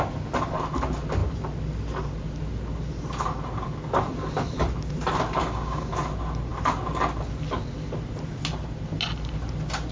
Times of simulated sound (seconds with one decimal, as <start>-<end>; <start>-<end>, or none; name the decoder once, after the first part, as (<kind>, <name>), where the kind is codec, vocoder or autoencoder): 5.4-5.9 (codec, DAC)